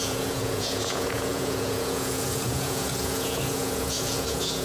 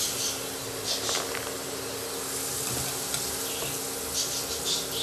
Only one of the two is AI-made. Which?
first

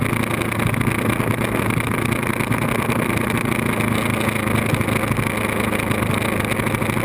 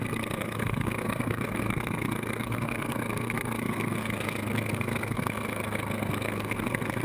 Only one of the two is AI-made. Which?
second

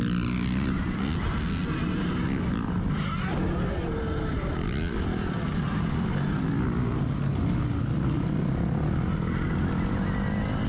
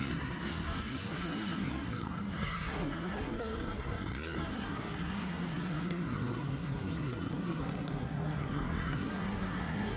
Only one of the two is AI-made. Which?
second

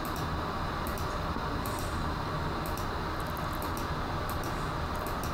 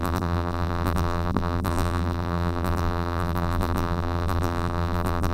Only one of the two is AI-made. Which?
second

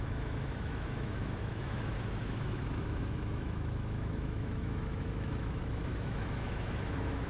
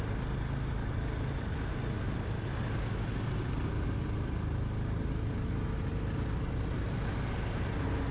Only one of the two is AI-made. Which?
first